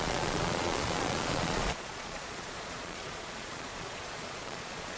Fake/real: fake